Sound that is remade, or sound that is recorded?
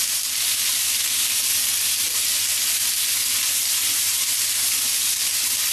recorded